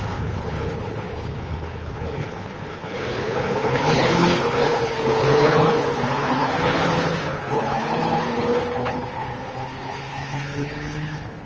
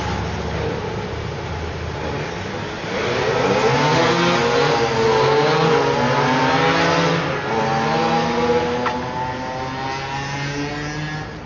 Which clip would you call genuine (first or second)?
second